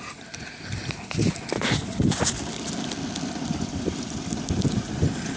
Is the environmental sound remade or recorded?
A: recorded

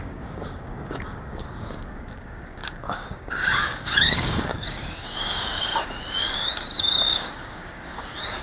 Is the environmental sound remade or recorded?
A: remade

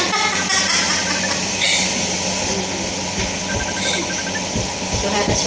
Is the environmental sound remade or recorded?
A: recorded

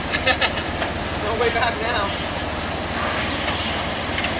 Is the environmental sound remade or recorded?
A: recorded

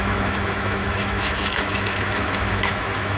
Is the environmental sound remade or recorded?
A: remade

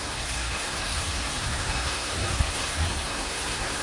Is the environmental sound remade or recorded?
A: remade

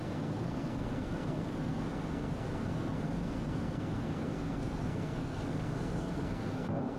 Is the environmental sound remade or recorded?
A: remade